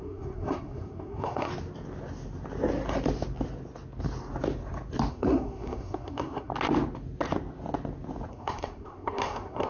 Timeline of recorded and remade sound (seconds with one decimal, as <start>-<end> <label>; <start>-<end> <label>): 0.0-1.5 remade; 1.5-5.1 recorded; 5.1-6.5 remade; 6.5-8.3 recorded; 8.3-9.7 remade